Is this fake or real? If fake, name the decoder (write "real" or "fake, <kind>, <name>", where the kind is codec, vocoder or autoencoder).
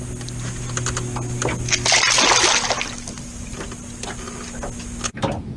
real